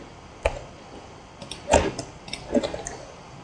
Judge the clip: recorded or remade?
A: recorded